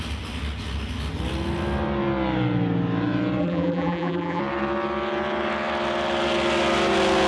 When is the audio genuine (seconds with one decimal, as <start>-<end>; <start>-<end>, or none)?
0.0-3.4; 4.4-7.3